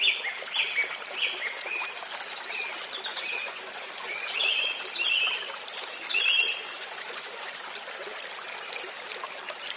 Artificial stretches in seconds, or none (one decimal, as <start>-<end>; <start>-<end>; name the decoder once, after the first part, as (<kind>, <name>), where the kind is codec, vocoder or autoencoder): 3.1-4.8 (vocoder, Vocos); 6.7-7.6